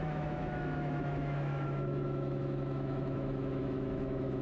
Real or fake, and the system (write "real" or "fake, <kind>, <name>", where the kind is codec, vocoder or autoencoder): fake, autoencoder, DAC-VAE